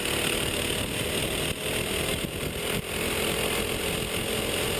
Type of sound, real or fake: real